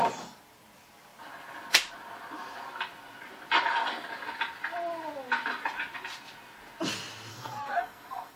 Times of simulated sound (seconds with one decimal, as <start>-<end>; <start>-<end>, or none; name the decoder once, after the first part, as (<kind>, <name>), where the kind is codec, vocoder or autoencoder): 7.3-8.4 (codec, SNAC)